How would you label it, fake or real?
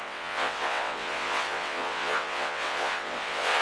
fake